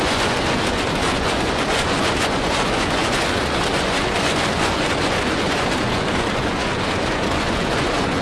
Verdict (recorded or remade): remade